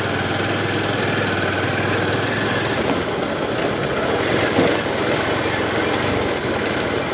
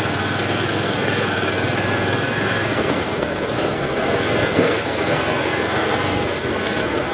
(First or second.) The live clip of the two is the first